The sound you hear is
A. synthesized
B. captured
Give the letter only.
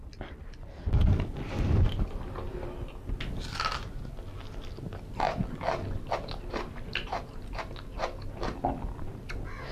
B